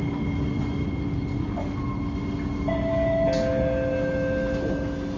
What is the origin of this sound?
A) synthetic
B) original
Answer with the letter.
B